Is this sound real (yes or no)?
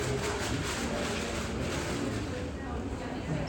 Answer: yes